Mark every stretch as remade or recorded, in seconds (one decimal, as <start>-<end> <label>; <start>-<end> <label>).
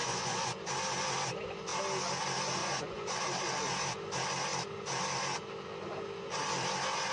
0.0-0.6 remade; 0.6-2.6 recorded; 2.6-3.2 remade; 3.2-7.1 recorded